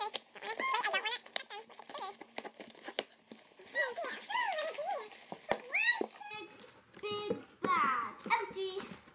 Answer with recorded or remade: recorded